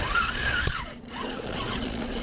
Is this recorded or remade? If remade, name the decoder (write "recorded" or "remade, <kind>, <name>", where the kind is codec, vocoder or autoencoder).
remade, vocoder, Vocos